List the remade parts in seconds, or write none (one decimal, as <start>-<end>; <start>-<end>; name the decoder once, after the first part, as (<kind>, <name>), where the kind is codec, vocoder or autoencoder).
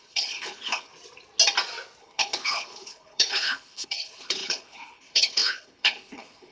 0.0-0.9 (codec, HILCodec); 2.0-6.5